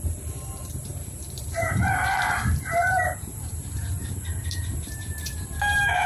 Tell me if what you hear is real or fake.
fake